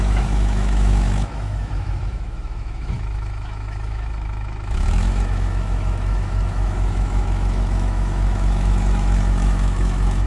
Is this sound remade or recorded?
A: remade